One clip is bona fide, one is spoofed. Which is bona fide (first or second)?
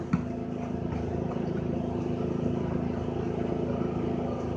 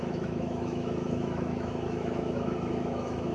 first